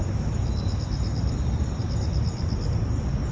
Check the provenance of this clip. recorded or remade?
recorded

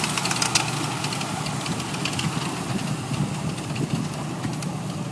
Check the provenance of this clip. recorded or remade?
recorded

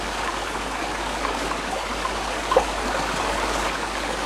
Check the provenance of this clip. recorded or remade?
remade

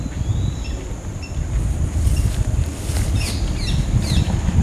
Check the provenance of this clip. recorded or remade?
recorded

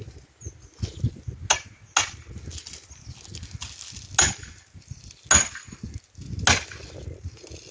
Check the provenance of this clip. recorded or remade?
recorded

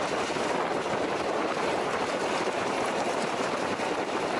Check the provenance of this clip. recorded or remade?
remade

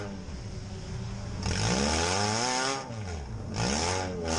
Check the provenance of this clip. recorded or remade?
recorded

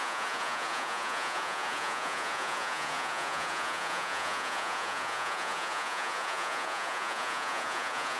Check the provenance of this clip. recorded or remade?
remade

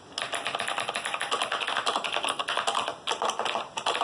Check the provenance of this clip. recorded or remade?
recorded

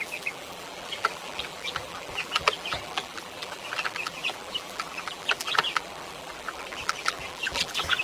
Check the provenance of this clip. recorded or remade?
remade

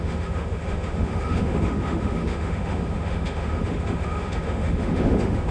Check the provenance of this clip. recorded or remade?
remade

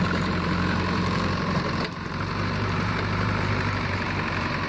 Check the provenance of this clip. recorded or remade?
remade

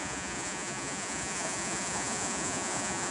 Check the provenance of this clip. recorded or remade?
remade